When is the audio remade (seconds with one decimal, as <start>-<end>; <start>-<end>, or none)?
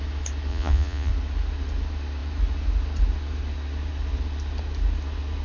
0.5-1.1